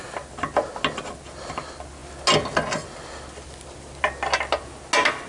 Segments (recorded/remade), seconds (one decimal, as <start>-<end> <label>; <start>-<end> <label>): 0.0-5.3 recorded